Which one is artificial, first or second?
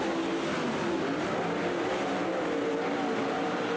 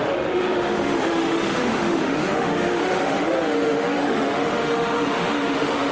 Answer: second